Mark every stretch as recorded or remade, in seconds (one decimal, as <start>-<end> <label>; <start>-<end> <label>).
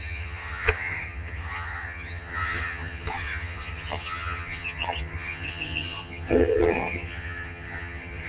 0.0-8.3 remade